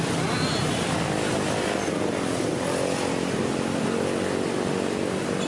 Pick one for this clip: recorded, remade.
recorded